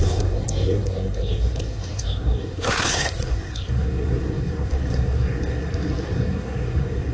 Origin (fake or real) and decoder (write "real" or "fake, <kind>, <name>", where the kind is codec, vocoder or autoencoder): fake, codec, SNAC